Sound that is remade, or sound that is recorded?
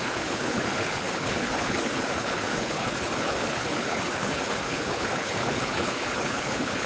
remade